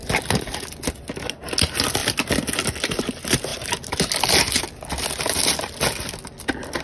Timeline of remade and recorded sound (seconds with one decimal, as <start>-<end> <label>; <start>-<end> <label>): 0.0-6.8 recorded